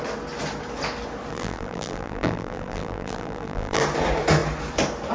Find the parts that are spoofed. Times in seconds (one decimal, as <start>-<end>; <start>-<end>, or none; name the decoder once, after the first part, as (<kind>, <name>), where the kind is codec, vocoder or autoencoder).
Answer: 1.3-3.8 (vocoder, BigVGAN v2)